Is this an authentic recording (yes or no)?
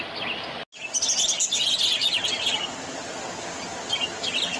yes